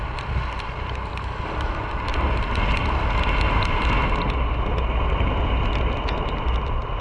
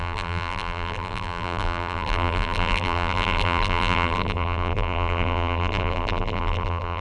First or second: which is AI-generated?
second